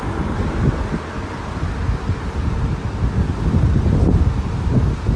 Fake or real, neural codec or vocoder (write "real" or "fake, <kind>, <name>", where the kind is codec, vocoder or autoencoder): real